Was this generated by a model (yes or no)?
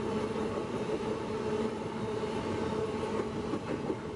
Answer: no